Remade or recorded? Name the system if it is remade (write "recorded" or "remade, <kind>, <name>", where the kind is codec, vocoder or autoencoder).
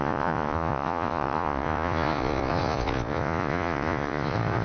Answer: remade, vocoder, Vocos